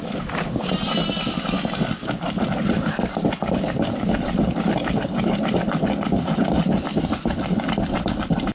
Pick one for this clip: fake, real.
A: real